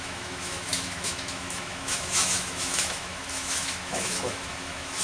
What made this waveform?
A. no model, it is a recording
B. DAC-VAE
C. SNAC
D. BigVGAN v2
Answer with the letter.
B